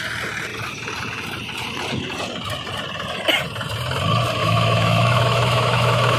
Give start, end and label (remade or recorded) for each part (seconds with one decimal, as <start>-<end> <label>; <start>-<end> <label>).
0.0-4.4 recorded; 4.4-6.2 remade